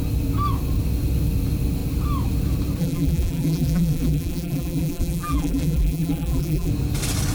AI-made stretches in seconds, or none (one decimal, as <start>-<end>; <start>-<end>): 2.8-6.7